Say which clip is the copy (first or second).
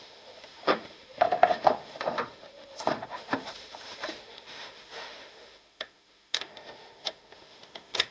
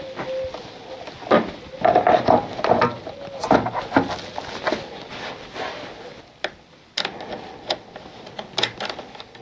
first